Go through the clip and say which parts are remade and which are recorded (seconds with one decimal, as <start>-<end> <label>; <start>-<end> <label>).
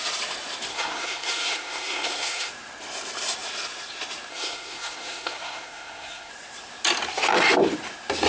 0.0-0.7 recorded; 0.7-2.5 remade; 2.5-4.3 recorded; 4.3-6.3 remade; 6.3-8.3 recorded